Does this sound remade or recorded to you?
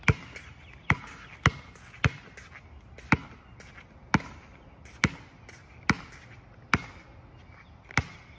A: recorded